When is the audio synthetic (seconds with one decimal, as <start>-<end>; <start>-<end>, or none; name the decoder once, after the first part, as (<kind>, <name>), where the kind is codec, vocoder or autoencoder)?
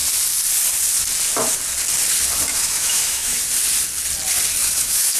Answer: 2.5-3.4 (autoencoder, DAC-VAE); 4.6-5.2